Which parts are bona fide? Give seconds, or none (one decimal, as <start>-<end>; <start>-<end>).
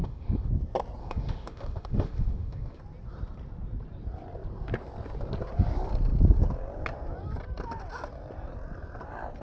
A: 0.5-1.0; 2.8-9.4